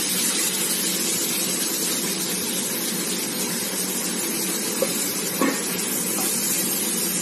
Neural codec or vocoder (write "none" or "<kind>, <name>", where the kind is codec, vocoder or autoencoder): none